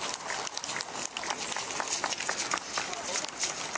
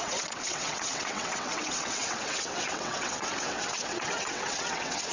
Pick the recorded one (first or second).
first